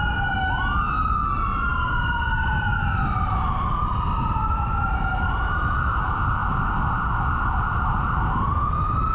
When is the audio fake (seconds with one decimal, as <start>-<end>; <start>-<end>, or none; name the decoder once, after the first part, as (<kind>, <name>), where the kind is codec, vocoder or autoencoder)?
none

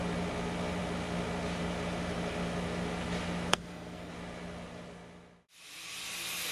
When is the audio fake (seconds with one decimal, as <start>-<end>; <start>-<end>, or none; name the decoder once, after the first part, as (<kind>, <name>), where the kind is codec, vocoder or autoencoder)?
3.5-4.1 (codec, SNAC)

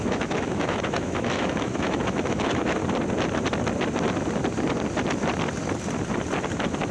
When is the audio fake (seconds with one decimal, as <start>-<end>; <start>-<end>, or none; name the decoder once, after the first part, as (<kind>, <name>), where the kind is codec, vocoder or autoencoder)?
0.0-2.8 (autoencoder, DAC-VAE)